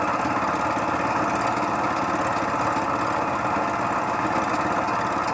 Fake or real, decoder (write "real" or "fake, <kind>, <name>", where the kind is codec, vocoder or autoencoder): real